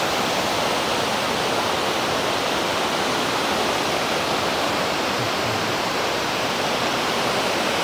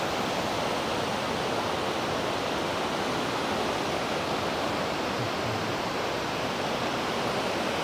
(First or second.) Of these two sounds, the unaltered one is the second